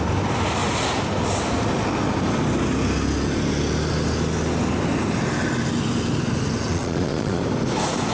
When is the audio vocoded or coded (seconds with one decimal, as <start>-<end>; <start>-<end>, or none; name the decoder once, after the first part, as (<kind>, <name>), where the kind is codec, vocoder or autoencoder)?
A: 6.7-7.4 (vocoder, Vocos)